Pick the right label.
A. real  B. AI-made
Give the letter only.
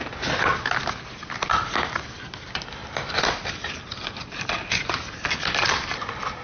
A